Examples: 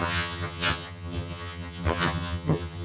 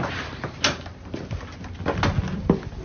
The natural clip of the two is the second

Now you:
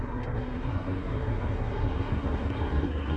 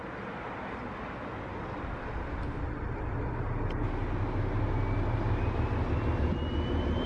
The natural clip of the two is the second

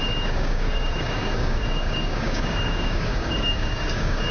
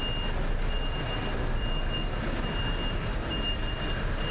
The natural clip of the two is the second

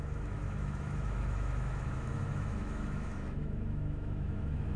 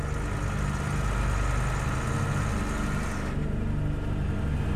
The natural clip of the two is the second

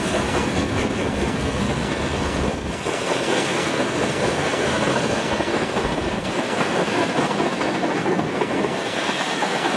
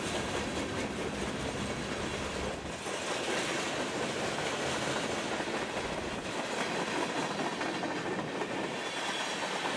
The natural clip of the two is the second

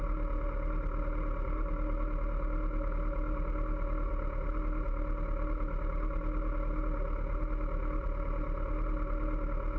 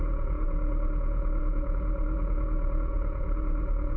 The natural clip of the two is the first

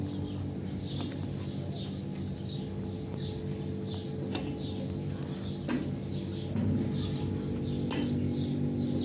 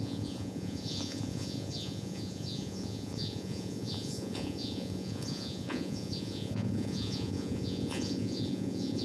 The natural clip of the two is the first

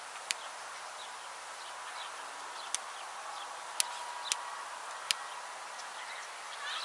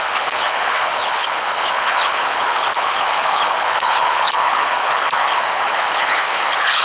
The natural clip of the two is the first